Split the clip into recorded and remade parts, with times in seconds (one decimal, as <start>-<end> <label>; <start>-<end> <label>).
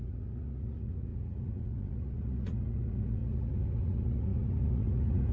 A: 0.0-5.3 remade